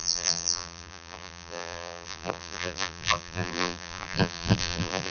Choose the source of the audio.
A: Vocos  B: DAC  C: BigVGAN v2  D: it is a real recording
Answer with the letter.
C